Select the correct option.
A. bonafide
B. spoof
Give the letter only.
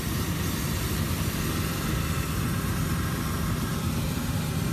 A